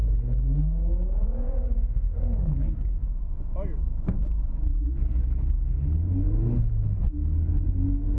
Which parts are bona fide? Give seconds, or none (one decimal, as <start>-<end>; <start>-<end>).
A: 3.0-3.8